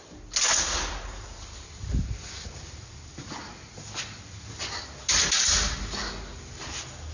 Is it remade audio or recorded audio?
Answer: recorded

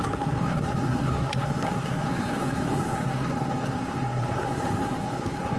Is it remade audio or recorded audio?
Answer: remade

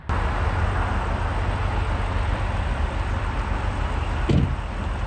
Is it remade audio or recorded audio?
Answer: recorded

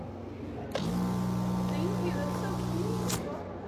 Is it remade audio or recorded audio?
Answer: recorded